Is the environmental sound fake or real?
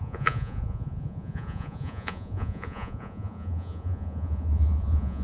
fake